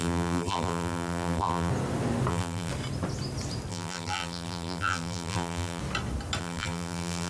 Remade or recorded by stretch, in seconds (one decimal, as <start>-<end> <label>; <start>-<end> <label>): 0.0-1.7 remade; 1.7-2.3 recorded; 2.3-2.7 remade; 2.7-3.7 recorded; 3.7-5.8 remade; 5.8-6.4 recorded; 6.4-7.3 remade